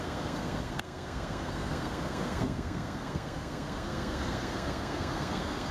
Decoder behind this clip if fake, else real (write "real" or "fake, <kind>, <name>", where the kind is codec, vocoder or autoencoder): fake, codec, SNAC